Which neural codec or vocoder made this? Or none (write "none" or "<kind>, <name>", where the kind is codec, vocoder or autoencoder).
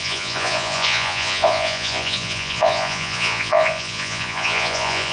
vocoder, Vocos